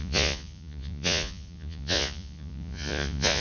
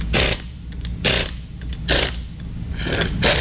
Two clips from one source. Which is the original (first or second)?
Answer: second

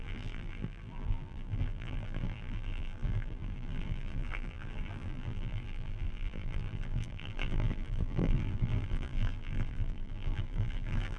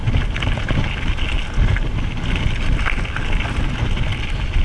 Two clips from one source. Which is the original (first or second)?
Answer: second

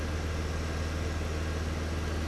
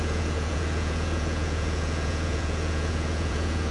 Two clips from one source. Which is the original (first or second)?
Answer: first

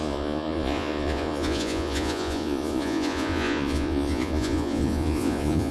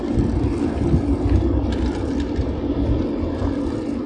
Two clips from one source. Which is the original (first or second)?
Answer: second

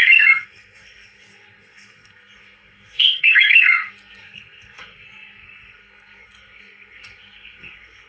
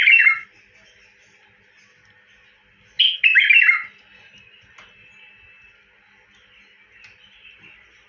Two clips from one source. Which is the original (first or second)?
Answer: second